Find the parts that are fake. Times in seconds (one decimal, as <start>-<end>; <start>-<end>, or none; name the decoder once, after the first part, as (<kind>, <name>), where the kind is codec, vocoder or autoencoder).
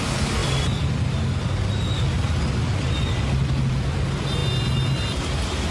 none